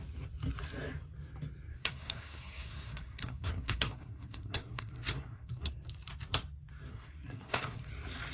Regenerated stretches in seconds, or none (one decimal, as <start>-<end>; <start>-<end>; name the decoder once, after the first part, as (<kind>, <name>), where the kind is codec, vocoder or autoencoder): 1.7-5.7 (codec, SNAC); 6.9-7.9